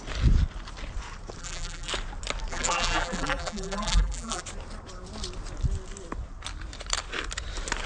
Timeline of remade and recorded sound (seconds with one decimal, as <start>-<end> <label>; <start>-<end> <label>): 0.0-1.4 recorded; 1.4-1.9 remade; 1.9-2.5 recorded; 2.5-4.4 remade; 4.4-7.9 recorded